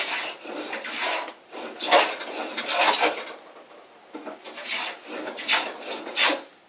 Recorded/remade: recorded